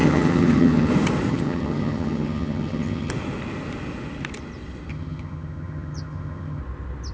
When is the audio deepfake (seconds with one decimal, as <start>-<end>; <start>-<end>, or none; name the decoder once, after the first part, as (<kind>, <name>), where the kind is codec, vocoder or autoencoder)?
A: 0.0-0.9 (vocoder, HiFi-GAN); 1.3-3.1; 4.9-6.6